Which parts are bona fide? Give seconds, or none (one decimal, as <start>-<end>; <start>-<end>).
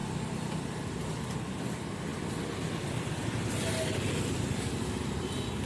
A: 0.0-5.7